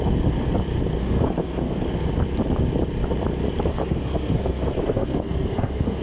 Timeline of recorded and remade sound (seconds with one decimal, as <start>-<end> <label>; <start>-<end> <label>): 0.0-1.0 recorded; 1.0-1.8 remade; 1.8-3.7 recorded; 3.7-6.0 remade